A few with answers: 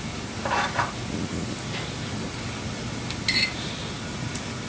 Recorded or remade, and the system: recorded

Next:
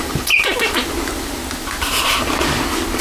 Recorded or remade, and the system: recorded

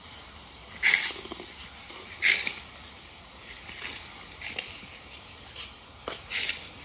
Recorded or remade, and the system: recorded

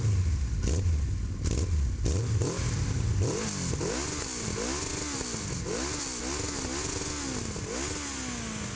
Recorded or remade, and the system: recorded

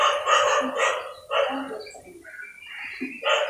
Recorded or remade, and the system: recorded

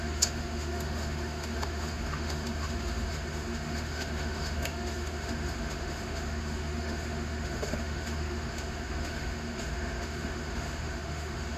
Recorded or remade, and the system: remade, autoencoder, DAC-VAE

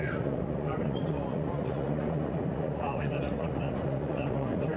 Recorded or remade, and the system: remade, vocoder, Vocos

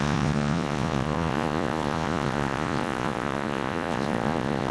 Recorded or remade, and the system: remade, vocoder, Vocos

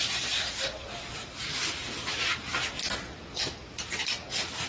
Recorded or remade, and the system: remade, vocoder, BigVGAN v2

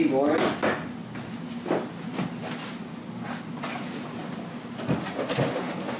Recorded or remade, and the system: recorded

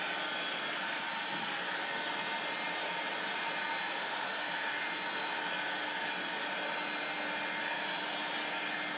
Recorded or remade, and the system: recorded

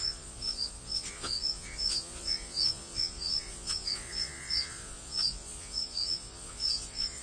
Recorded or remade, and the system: remade, vocoder, Vocos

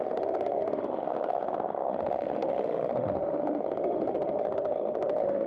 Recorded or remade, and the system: remade, autoencoder, DAC-VAE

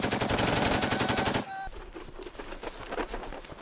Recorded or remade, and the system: recorded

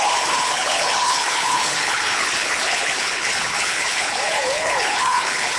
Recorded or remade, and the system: remade, codec, HILCodec